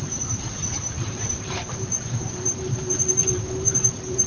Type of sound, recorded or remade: remade